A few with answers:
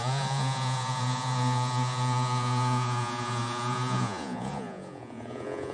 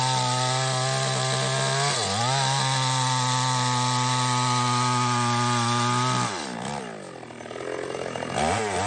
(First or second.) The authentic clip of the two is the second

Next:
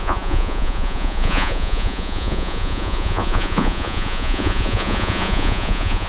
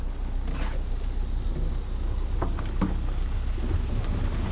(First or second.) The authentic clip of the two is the second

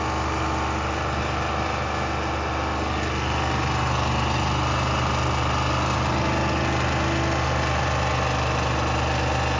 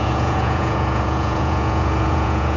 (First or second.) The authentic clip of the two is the first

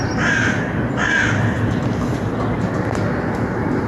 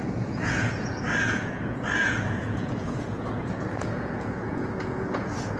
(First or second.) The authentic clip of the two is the first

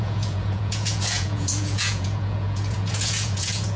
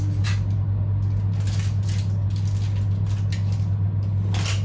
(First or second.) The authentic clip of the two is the second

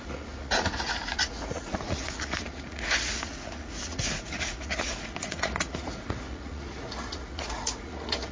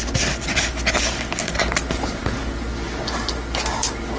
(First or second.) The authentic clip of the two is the second